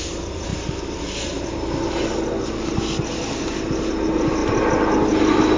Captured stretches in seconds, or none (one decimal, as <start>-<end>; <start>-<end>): 0.0-5.6